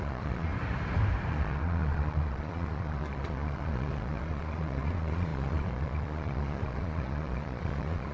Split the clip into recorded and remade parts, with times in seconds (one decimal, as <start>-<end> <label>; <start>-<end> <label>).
0.0-0.5 remade; 0.5-1.3 recorded; 1.3-8.1 remade